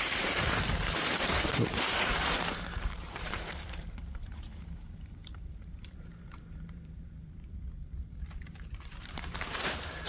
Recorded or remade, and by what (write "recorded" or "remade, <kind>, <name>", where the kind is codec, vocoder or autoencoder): remade, vocoder, BigVGAN v2